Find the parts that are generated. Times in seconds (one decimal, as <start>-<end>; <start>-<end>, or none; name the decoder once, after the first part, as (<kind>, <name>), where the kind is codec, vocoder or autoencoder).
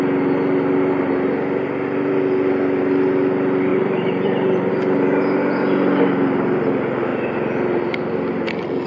3.7-4.7 (vocoder, BigVGAN v2)